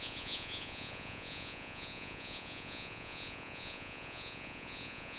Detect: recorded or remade remade